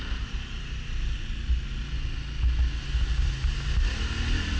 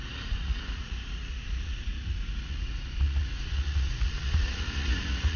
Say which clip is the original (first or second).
first